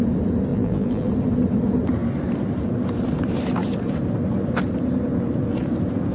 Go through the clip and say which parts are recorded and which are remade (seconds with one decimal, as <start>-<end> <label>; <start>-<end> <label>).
0.0-0.5 recorded; 0.5-1.1 remade; 1.1-6.1 recorded

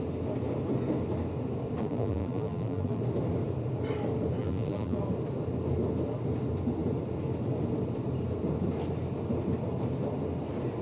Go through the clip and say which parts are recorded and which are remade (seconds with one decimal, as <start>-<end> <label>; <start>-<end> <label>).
0.0-1.8 recorded; 1.8-3.0 remade; 3.0-4.4 recorded; 4.4-5.0 remade; 5.0-10.8 recorded

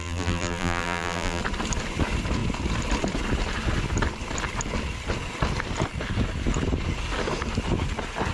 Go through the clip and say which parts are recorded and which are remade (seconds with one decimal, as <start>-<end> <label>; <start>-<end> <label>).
0.0-1.4 remade; 1.4-8.3 recorded

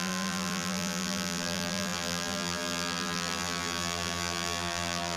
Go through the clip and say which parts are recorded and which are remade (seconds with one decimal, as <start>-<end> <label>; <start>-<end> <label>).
0.0-5.2 remade

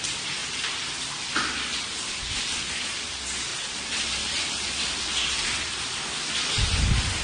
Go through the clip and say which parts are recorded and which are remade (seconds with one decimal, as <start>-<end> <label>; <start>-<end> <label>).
0.0-3.5 recorded; 3.5-5.4 remade; 5.4-7.2 recorded